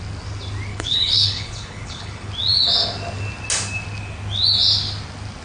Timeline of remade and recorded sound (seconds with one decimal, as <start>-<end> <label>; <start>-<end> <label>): 0.0-0.7 recorded; 0.7-2.3 remade; 2.3-5.4 recorded

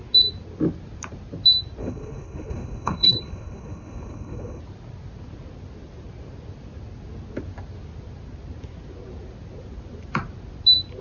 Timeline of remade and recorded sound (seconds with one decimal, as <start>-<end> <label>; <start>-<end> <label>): 0.0-1.8 recorded; 1.8-4.6 remade; 4.6-11.0 recorded

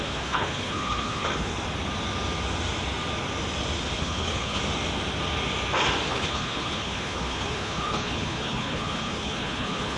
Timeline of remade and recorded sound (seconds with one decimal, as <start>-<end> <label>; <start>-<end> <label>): 0.0-1.5 remade; 1.5-4.0 recorded; 4.0-4.6 remade; 4.6-6.1 recorded; 6.1-10.0 remade